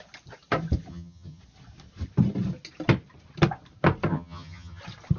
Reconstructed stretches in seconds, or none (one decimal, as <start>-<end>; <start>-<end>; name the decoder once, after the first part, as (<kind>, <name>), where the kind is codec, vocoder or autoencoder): 0.9-1.4 (vocoder, HiFi-GAN); 4.1-4.8